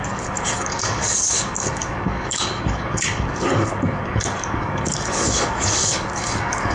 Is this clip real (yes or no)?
no